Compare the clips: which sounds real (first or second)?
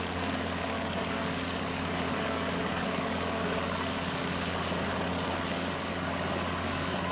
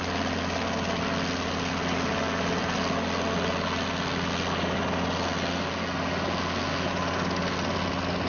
second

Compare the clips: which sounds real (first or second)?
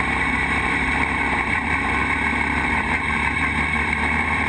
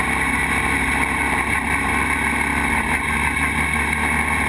second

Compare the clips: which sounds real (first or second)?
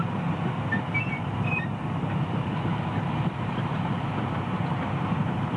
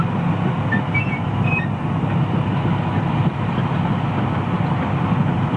second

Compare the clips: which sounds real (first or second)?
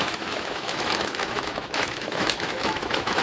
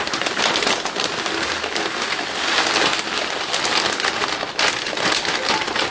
second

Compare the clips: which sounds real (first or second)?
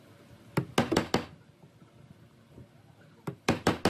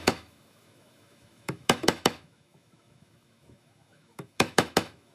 first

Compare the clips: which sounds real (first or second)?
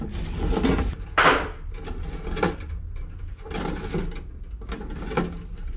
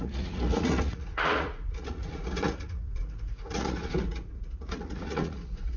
first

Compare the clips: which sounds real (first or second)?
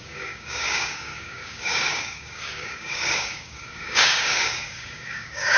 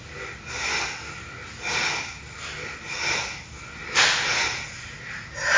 second